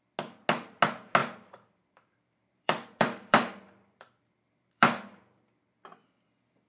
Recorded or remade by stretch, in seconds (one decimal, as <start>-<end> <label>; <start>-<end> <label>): 0.0-1.2 recorded; 1.2-5.2 remade; 5.2-6.7 recorded